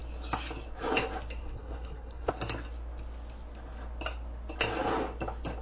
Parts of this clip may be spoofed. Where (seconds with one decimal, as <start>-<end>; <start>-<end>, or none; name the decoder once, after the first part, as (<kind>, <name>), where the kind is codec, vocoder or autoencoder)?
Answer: 1.4-2.3 (codec, SNAC)